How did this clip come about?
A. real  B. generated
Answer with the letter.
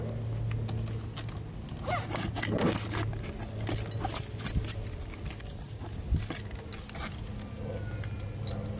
A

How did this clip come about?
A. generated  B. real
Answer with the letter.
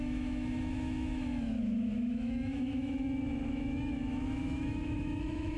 A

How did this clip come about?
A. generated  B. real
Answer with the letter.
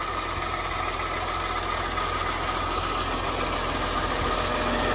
B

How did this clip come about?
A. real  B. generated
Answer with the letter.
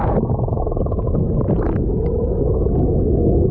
A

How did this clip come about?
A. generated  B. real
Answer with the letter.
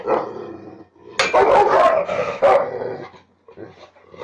B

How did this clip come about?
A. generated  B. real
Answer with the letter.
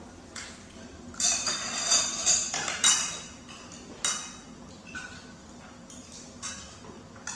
B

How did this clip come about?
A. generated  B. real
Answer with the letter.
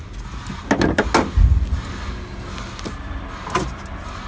B